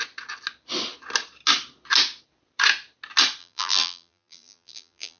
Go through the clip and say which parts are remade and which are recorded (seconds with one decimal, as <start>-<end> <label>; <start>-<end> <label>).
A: 0.0-3.4 recorded; 3.4-5.2 remade